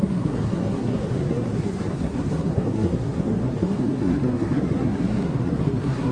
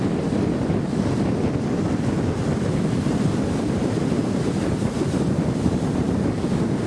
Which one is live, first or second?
second